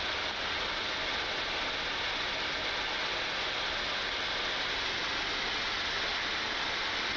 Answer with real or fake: real